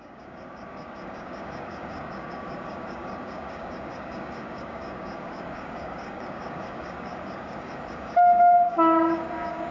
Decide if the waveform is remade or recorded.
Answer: remade